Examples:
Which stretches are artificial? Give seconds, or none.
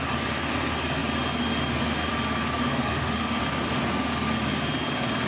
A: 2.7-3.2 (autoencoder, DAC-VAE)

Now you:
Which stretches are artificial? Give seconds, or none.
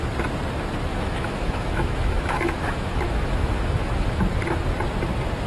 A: 0.9-4.2 (autoencoder, DAC-VAE)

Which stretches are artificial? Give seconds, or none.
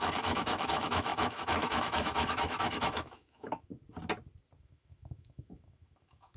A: 0.0-3.7 (autoencoder, DAC-VAE); 4.6-6.4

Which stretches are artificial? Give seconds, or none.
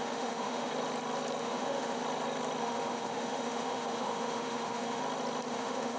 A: 0.0-0.7 (autoencoder, DAC-VAE); 1.4-2.0; 2.6-5.0; 5.5-6.0